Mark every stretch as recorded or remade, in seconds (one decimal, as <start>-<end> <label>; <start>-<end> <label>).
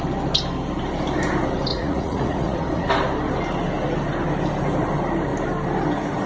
0.0-1.7 recorded; 1.7-2.9 remade; 2.9-6.3 recorded